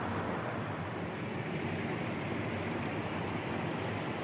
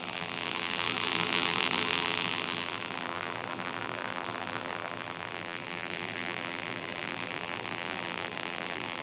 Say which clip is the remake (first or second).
second